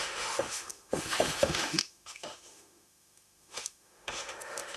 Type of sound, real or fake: fake